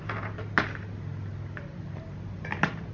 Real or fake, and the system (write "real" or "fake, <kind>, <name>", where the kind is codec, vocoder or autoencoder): real